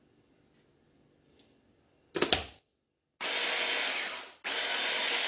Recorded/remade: recorded